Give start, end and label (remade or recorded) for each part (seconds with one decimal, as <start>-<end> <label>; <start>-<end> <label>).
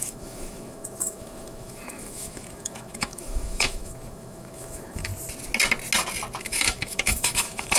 0.0-5.1 remade; 5.1-6.4 recorded; 6.4-7.8 remade